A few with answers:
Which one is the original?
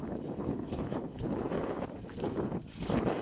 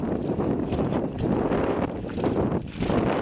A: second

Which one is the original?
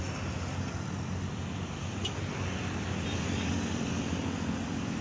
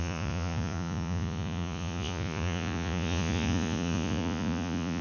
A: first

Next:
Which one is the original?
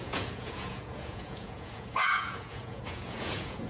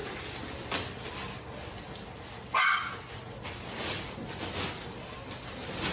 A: second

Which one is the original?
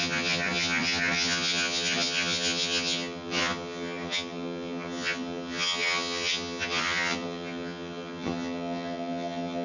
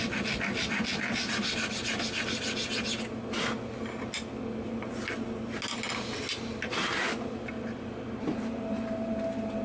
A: second